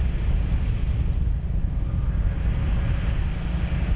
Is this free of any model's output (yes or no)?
yes